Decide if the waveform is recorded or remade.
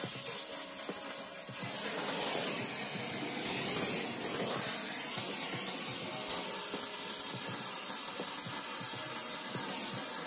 recorded